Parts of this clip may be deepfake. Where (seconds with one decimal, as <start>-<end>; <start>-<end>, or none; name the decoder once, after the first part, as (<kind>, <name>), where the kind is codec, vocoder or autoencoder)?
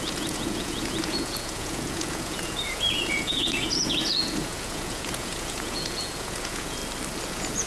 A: 0.0-6.8 (vocoder, Vocos); 7.3-7.7